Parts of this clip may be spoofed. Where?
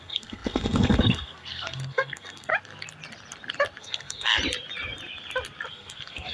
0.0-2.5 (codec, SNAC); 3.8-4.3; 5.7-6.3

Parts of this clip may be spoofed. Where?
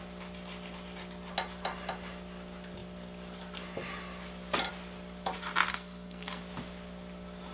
5.7-6.4 (codec, SNAC)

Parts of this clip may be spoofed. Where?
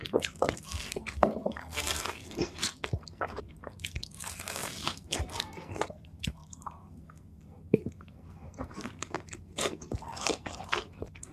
0.0-11.3 (codec, SNAC)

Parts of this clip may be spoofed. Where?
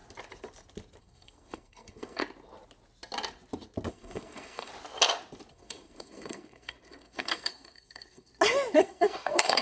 1.0-2.2 (codec, SNAC); 3.9-4.7; 5.5-8.3; 8.8-9.6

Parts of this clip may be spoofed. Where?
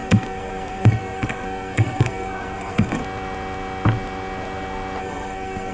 0.0-3.0 (codec, SNAC); 5.0-5.7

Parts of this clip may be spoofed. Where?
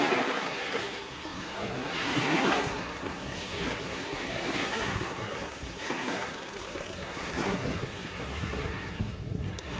0.0-9.8 (codec, SNAC)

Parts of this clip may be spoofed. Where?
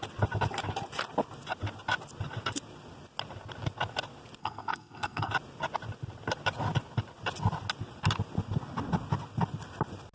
4.4-5.3 (codec, SNAC)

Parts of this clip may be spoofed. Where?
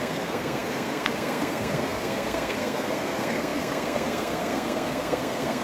0.0-5.6 (codec, SNAC)